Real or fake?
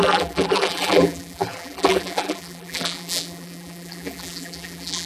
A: fake